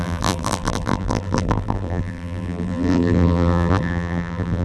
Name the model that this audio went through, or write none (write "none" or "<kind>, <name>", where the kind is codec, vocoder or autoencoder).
vocoder, BigVGAN v2